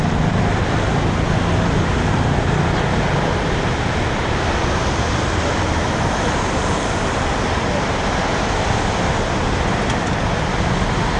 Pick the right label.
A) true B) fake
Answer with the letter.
A